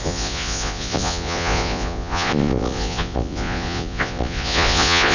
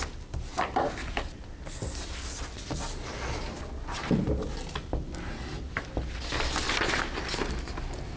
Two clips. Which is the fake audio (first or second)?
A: first